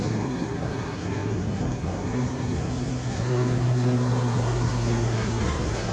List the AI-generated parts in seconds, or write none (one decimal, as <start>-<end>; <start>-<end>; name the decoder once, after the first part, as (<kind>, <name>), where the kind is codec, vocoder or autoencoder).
0.0-5.9 (codec, SNAC)